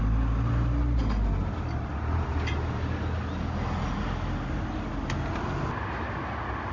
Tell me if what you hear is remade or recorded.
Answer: recorded